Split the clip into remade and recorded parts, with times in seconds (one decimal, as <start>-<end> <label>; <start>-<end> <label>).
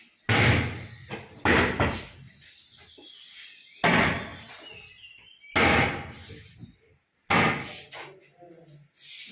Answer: 0.0-9.3 recorded